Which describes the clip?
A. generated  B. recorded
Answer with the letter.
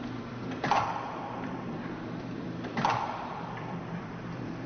A